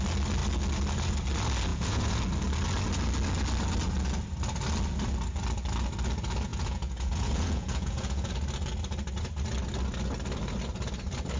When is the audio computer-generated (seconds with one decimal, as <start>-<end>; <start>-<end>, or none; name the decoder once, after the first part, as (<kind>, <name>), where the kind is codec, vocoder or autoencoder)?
1.7-2.2 (vocoder, Vocos); 6.5-8.3